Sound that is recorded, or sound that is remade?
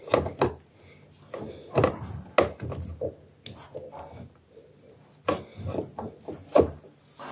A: recorded